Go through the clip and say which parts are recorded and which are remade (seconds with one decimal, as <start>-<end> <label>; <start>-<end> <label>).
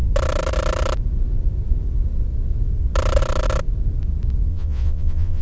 0.0-4.5 recorded; 4.5-5.4 remade